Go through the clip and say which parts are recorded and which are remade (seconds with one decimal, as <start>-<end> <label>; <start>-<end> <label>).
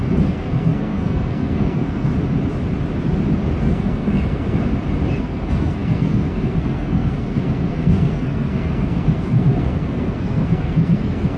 0.0-2.1 remade; 2.1-3.6 recorded; 3.6-4.7 remade; 4.7-5.2 recorded; 5.2-11.4 remade